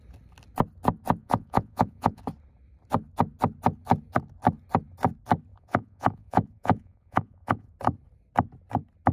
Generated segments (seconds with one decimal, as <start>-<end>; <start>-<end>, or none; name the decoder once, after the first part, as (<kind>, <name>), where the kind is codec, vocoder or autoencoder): 1.2-2.2 (vocoder, Vocos); 5.5-7.7